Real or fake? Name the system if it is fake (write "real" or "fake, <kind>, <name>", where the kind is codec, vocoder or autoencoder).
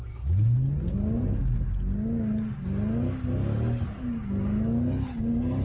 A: real